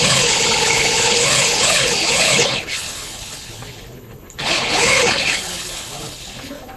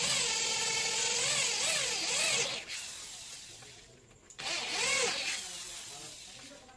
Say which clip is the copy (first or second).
first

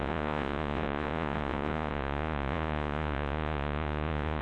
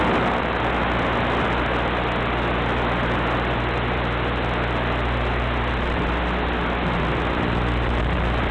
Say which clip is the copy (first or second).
first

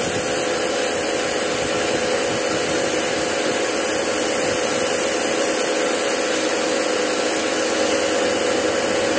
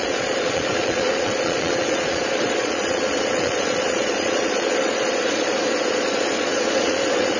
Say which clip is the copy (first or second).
second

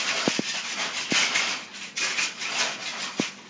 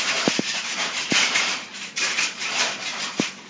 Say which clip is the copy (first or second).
second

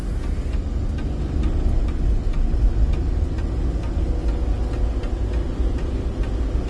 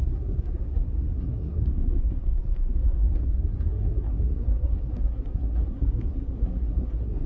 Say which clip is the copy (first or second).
second